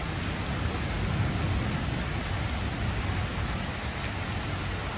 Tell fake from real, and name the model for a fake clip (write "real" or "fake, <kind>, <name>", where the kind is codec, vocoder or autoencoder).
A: real